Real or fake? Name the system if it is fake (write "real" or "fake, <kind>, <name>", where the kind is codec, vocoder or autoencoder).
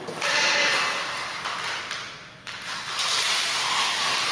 fake, vocoder, BigVGAN v2